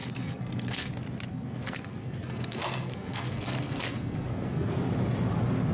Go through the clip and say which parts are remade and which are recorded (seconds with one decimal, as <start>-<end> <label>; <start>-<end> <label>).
0.0-0.9 remade; 0.9-1.3 recorded; 1.3-4.7 remade; 4.7-5.7 recorded